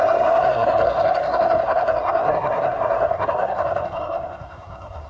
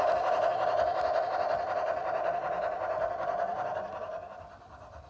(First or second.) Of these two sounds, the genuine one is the second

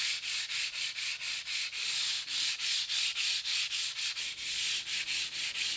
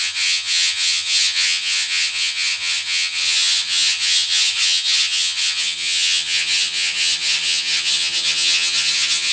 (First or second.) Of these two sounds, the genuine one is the first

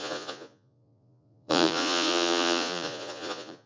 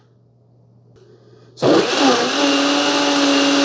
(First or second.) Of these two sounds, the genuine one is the second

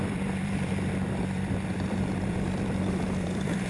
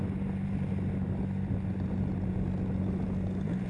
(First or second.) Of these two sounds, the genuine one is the second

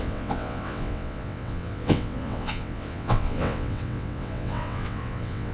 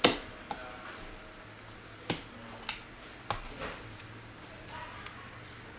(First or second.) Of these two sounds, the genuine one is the second